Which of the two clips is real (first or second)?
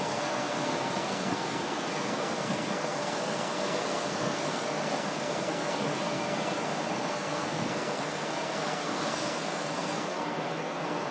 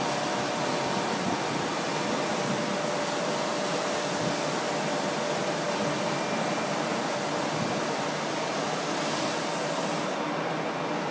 second